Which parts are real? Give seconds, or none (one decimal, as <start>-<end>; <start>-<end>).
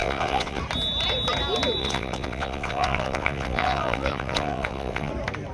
0.6-1.8; 5.1-5.5